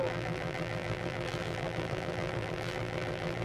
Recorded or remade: remade